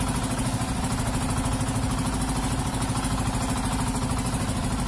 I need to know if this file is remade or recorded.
recorded